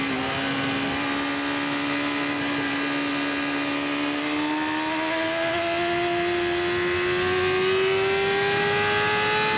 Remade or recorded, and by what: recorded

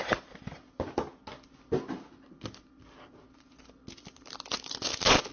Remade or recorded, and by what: recorded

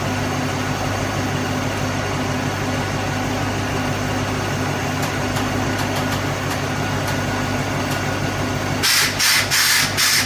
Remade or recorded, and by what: recorded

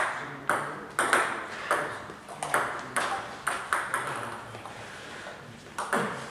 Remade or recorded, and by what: recorded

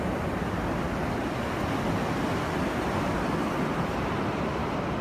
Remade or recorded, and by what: recorded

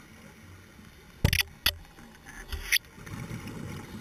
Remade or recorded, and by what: recorded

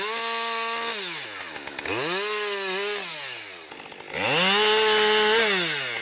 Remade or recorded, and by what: recorded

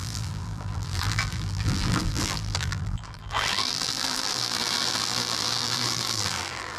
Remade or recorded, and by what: remade, vocoder, BigVGAN v2